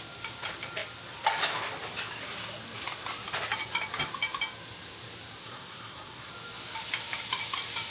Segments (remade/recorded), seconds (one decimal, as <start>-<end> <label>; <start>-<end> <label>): 0.0-5.4 recorded; 5.4-6.3 remade; 6.3-7.9 recorded